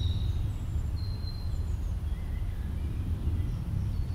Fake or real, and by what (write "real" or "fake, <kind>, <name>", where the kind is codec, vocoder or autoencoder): real